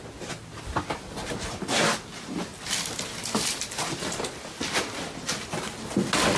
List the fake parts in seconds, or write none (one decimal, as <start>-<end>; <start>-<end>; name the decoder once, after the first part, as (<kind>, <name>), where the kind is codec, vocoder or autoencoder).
2.5-3.8 (vocoder, BigVGAN v2)